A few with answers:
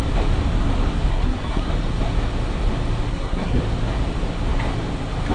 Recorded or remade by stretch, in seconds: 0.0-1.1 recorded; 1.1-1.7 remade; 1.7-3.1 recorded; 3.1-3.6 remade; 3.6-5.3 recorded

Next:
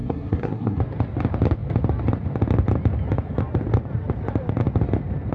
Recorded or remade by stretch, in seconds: 0.0-0.8 remade; 0.8-5.3 recorded

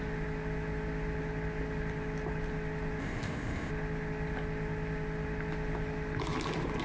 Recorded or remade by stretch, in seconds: 0.0-3.0 recorded; 3.0-3.7 remade; 3.7-6.8 recorded

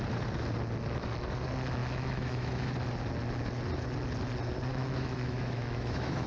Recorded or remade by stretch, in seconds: 0.0-1.8 recorded; 1.8-2.7 remade; 2.7-4.7 recorded; 4.7-6.3 remade

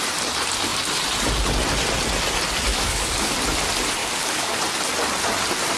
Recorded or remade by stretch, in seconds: 0.0-2.7 recorded; 2.7-3.3 remade; 3.3-4.0 recorded; 4.0-4.6 remade; 4.6-5.8 recorded

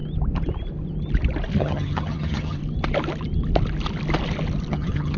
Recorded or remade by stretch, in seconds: 0.0-1.6 recorded; 1.6-2.6 remade; 2.6-4.7 recorded; 4.7-5.2 remade

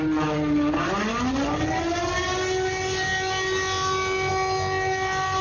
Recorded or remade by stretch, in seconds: 0.0-5.4 recorded

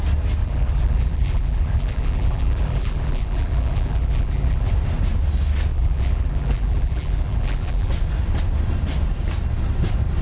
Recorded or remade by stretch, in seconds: 0.0-0.4 recorded; 0.4-4.7 remade; 4.7-5.7 recorded; 5.7-7.9 remade; 7.9-10.2 recorded